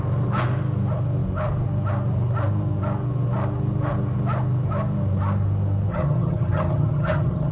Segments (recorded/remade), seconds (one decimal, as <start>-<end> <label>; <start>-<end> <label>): 0.0-5.9 recorded; 5.9-7.5 remade